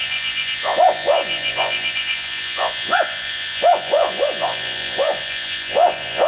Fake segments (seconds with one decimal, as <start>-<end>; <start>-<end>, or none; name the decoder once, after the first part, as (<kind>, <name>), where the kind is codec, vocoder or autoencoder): 0.0-6.3 (vocoder, Vocos)